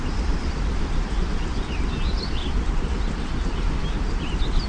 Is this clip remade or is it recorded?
recorded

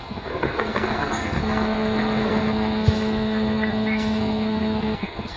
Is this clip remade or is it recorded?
remade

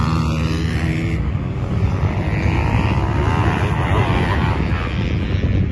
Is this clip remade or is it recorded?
recorded